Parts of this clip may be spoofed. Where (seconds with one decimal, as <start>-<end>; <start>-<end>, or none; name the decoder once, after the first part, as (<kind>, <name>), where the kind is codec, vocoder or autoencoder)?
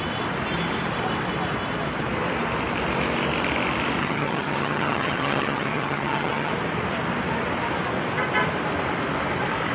4.0-6.5 (vocoder, HiFi-GAN)